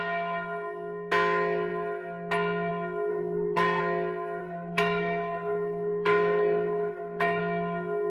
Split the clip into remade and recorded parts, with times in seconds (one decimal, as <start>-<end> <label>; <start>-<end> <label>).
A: 0.0-3.1 recorded; 3.1-3.8 remade; 3.8-4.4 recorded; 4.4-7.4 remade; 7.4-8.1 recorded